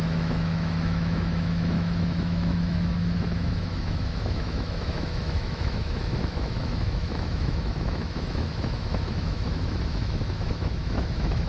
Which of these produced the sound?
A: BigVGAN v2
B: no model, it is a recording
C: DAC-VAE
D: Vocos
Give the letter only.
C